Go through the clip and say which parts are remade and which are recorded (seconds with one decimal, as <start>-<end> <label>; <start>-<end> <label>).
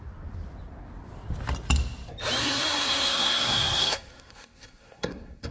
0.0-2.4 recorded; 2.4-5.5 remade